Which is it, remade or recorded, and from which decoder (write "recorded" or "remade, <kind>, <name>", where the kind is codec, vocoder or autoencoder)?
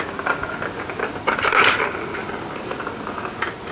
recorded